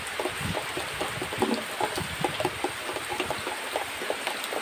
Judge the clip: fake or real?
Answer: real